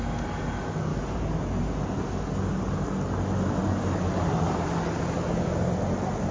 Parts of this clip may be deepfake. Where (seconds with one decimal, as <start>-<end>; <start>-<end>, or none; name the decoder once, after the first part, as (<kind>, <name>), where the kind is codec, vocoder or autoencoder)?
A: none